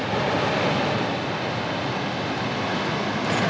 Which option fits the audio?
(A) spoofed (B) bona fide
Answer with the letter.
B